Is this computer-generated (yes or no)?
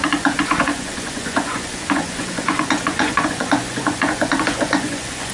yes